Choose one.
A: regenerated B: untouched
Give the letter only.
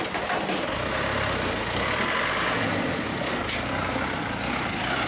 B